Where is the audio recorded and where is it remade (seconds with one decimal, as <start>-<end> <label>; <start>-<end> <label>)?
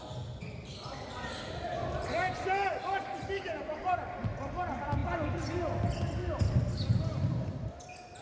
0.0-8.2 recorded